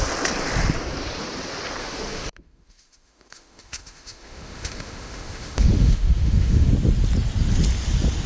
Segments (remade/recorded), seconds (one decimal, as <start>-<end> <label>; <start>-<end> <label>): 0.0-1.8 recorded; 1.8-6.7 remade; 6.7-8.3 recorded